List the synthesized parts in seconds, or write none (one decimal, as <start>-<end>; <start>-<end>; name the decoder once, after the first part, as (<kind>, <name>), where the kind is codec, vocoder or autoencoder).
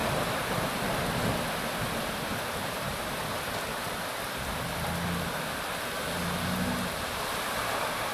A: 0.0-0.6 (vocoder, BigVGAN v2); 2.3-2.9